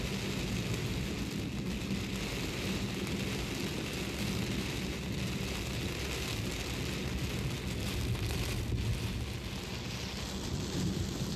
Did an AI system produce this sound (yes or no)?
no